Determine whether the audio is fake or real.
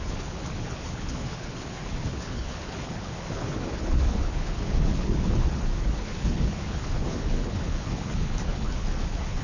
fake